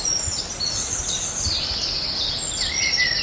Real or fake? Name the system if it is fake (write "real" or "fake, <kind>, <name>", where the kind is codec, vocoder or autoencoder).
real